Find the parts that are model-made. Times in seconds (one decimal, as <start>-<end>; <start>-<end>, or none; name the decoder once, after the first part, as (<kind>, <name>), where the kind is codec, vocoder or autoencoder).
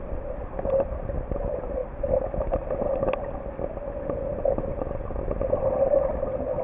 none